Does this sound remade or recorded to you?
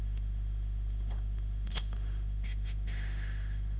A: remade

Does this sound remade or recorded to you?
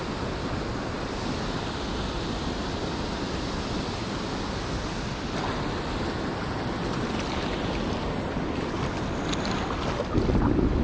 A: recorded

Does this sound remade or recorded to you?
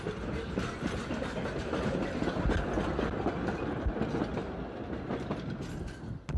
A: recorded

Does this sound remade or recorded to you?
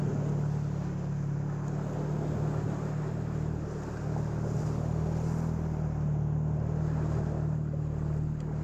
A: recorded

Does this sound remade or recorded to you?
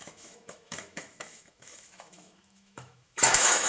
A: remade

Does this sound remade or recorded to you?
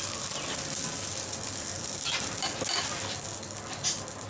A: recorded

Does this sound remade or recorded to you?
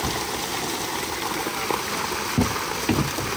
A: recorded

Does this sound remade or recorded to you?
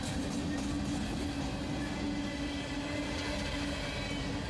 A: recorded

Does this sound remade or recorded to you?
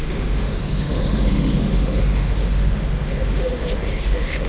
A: remade